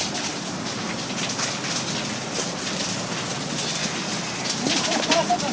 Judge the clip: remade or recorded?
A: recorded